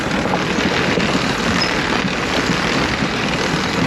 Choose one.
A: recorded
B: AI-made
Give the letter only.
A